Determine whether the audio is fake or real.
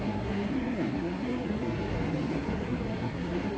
fake